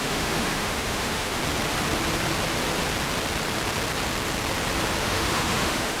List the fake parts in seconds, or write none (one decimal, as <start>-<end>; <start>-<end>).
0.0-1.4; 5.0-6.0